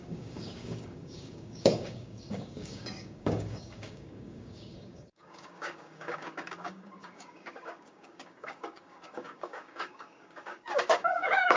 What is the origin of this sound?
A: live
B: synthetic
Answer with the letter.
B